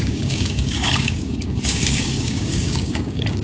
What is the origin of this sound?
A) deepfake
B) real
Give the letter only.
A